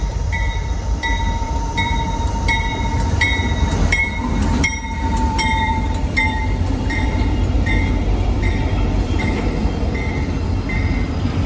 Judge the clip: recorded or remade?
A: remade